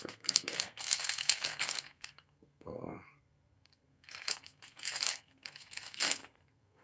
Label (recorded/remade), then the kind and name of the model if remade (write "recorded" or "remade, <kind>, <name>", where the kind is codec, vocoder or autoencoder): remade, codec, SNAC